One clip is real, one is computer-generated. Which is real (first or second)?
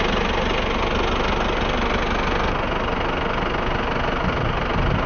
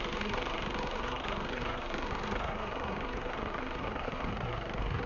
first